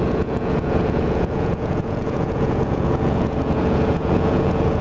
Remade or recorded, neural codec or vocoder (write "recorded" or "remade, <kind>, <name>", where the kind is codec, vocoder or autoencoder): remade, vocoder, Vocos